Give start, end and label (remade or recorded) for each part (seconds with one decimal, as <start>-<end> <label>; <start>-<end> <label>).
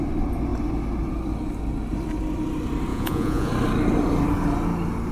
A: 0.0-2.9 recorded; 2.9-3.5 remade; 3.5-5.1 recorded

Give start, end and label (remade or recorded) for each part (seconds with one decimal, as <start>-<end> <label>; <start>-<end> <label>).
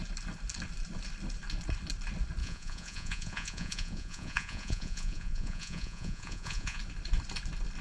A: 0.0-2.4 recorded; 2.4-6.8 remade; 6.8-7.8 recorded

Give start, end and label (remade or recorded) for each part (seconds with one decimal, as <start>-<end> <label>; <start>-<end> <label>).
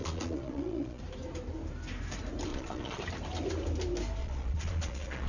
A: 0.0-1.0 remade; 1.0-2.5 recorded; 2.5-3.0 remade; 3.0-4.2 recorded; 4.2-5.3 remade